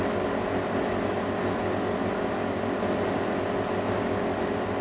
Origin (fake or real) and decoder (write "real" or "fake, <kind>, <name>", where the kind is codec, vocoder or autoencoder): real